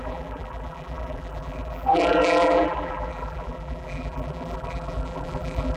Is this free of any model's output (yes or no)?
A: no